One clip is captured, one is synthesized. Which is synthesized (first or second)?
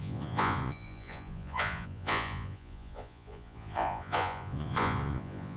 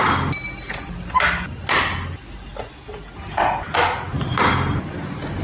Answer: first